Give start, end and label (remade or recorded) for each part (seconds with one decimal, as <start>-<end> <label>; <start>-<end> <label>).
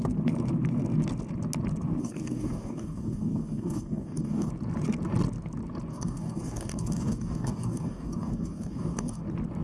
0.0-2.0 recorded; 2.0-4.5 remade; 4.5-5.9 recorded; 5.9-9.2 remade; 9.2-9.6 recorded